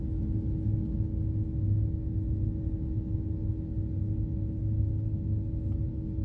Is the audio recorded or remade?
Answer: recorded